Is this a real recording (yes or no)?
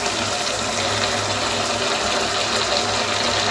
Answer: yes